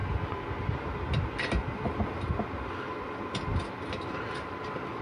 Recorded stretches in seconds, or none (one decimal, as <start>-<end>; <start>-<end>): 0.0-5.0